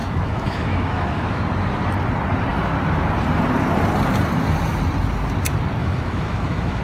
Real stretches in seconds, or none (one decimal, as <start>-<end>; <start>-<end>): 1.4-5.8